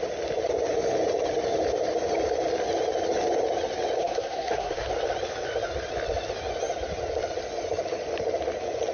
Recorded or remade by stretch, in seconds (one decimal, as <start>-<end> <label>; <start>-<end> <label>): 0.0-4.0 recorded; 4.0-4.9 remade; 4.9-8.9 recorded